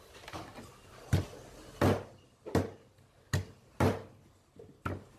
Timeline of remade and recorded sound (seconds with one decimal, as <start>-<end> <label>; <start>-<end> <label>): 0.0-0.5 remade; 0.5-3.6 recorded; 3.6-5.2 remade